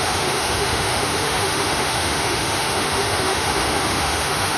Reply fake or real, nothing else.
fake